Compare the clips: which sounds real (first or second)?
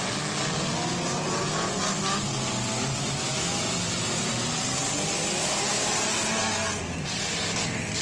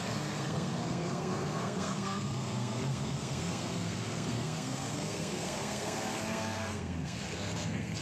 first